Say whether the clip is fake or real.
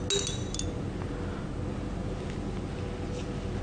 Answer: real